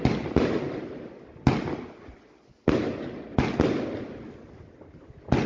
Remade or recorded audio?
recorded